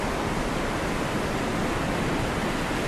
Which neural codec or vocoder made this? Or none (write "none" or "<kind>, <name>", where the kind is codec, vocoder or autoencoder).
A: none